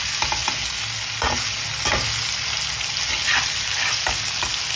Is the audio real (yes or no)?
yes